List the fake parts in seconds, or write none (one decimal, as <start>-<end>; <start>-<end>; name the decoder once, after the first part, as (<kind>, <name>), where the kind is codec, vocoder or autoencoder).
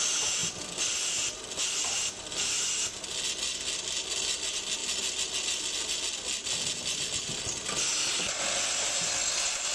none